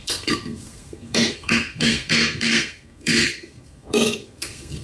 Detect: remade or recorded remade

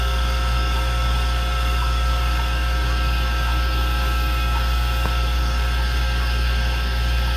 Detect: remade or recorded remade